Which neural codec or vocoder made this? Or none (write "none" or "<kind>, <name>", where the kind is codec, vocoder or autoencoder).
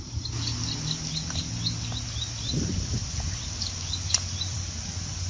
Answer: none